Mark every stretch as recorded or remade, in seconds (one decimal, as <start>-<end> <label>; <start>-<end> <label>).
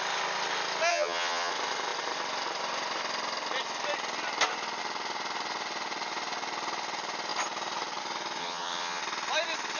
0.0-0.9 recorded; 0.9-1.5 remade; 1.5-8.4 recorded; 8.4-9.0 remade; 9.0-9.8 recorded